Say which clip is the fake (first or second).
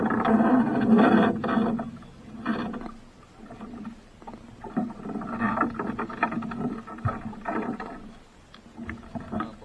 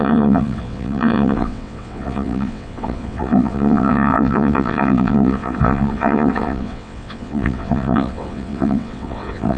second